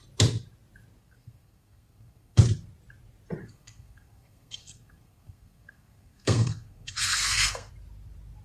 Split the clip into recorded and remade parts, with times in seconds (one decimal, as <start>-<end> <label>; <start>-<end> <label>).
0.0-1.0 recorded; 1.0-2.4 remade; 2.4-3.4 recorded; 3.4-7.7 remade; 7.7-8.4 recorded